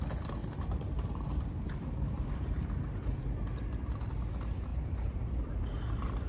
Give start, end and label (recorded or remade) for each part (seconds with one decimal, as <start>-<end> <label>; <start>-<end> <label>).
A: 0.0-0.4 recorded; 0.4-3.2 remade; 3.2-4.7 recorded; 4.7-5.3 remade; 5.3-6.3 recorded